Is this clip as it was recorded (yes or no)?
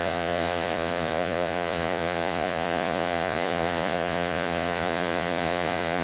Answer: no